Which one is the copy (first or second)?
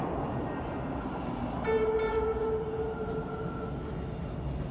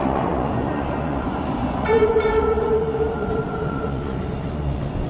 second